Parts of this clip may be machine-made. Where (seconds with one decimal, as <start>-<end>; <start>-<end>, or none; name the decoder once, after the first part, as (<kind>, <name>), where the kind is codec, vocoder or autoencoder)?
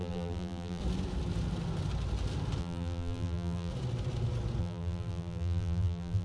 0.0-0.8 (vocoder, BigVGAN v2); 2.6-3.7; 4.6-6.2